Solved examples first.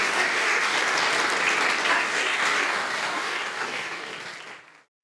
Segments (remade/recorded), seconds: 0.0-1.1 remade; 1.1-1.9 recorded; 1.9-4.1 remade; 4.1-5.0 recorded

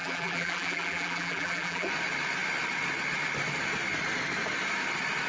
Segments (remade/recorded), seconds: 0.0-1.9 remade; 1.9-5.3 recorded

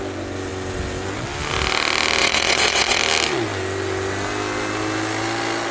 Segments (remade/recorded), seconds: 0.0-2.2 recorded; 2.2-3.0 remade; 3.0-5.7 recorded